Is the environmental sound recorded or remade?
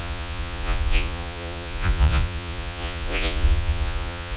remade